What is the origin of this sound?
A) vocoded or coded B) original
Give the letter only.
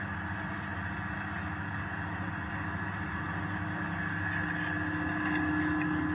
B